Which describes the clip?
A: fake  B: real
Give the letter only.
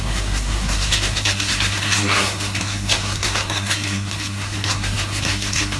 A